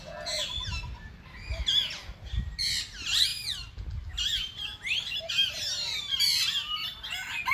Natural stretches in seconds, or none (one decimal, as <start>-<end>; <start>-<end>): 0.0-7.5